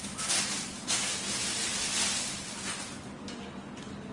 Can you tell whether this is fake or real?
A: real